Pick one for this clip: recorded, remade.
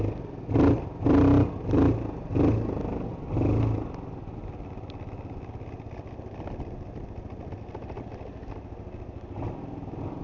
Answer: recorded